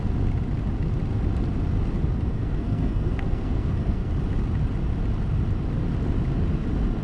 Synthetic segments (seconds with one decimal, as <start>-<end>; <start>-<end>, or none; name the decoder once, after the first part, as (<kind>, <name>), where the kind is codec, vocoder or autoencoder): 2.3-4.1 (codec, SNAC)